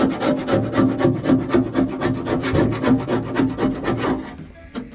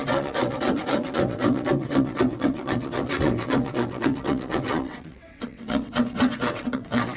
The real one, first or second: first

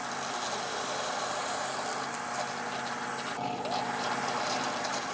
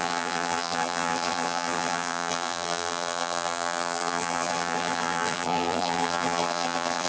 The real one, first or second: first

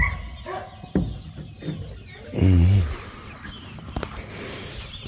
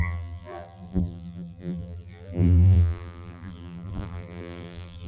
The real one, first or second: first